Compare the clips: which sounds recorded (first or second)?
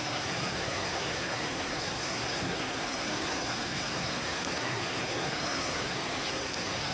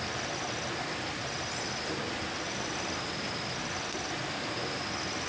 second